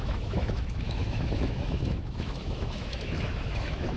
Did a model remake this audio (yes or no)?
yes